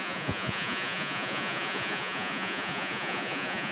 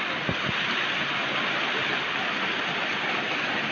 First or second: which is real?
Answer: second